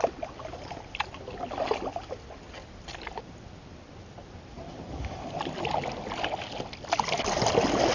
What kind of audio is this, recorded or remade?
recorded